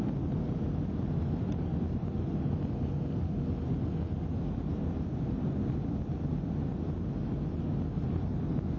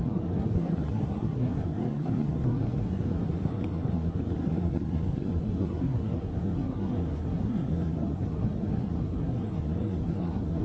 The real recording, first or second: first